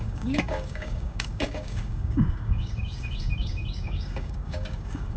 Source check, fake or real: fake